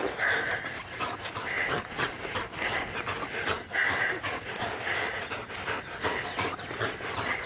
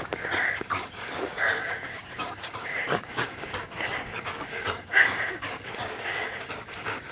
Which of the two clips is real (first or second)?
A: first